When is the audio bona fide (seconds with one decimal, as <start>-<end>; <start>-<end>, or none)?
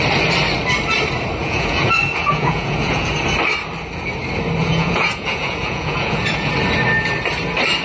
0.0-1.4; 3.1-4.6; 6.5-7.8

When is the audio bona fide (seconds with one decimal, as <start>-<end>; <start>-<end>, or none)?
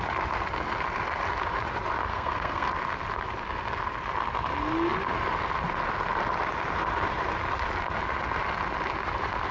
0.0-2.1; 2.7-9.5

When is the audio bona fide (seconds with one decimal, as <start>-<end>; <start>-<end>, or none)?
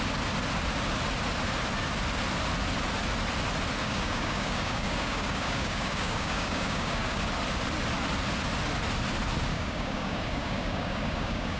0.0-3.8; 7.2-9.5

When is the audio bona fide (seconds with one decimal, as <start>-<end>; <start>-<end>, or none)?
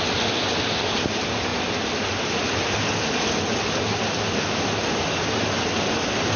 0.0-6.4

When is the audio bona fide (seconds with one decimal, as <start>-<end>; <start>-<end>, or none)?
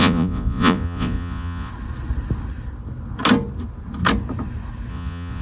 1.7-4.9